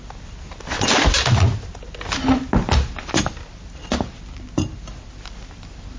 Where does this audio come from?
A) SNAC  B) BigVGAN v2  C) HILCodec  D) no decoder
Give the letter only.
D